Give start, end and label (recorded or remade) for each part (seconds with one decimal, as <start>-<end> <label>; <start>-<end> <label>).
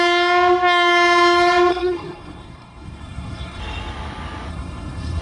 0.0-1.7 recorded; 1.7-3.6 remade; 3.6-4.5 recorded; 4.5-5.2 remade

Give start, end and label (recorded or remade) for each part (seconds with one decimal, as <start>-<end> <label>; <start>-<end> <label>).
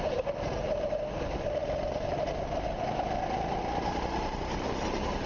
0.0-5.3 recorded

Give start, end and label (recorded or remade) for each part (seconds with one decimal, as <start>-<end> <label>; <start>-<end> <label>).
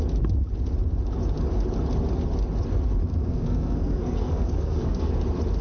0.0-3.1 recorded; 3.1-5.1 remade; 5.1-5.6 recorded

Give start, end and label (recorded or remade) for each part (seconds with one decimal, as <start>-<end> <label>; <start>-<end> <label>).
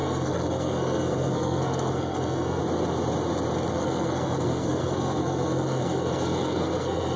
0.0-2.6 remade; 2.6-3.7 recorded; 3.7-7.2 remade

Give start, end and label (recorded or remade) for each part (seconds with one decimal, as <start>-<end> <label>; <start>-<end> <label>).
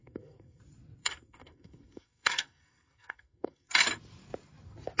0.0-0.6 remade; 0.6-1.0 recorded; 1.0-3.7 remade; 3.7-5.0 recorded